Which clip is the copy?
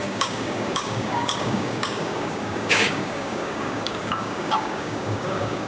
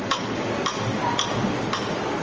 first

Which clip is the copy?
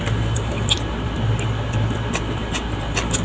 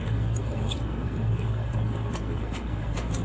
second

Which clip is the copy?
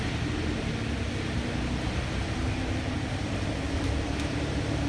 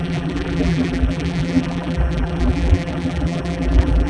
second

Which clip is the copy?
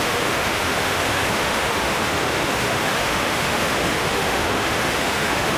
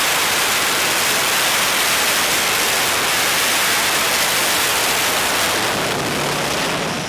first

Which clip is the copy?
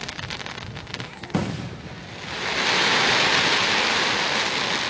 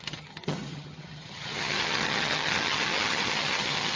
second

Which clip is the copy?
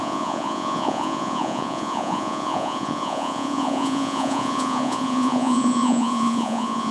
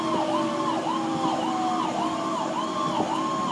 first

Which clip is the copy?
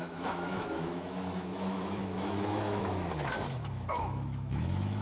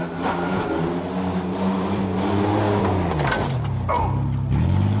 first